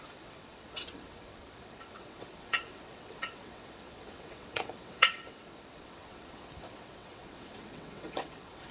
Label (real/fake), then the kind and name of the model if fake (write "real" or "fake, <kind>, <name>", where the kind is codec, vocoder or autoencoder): fake, vocoder, WaveNeXt